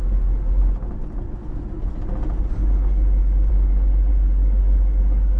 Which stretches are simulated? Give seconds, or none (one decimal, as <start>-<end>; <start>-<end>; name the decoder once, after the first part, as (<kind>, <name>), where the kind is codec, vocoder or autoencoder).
2.5-3.5 (codec, DAC); 4.1-5.4